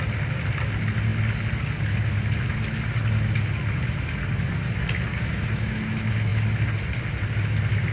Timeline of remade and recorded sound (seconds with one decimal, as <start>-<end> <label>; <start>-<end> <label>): 0.0-5.1 recorded; 5.1-5.8 remade; 5.8-7.9 recorded